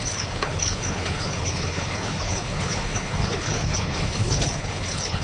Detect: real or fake fake